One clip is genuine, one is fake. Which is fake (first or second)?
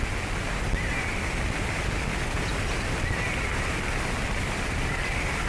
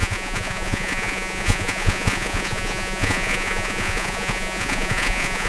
second